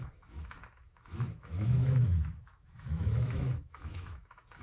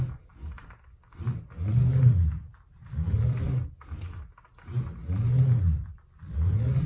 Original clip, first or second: second